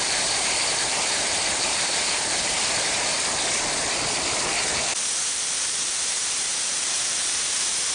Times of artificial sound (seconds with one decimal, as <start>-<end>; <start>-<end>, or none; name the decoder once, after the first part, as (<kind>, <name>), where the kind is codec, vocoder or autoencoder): 0.0-3.1 (vocoder, BigVGAN v2); 4.0-4.9; 5.6-7.9